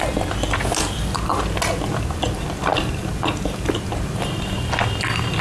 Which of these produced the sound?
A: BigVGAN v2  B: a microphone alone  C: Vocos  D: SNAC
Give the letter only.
B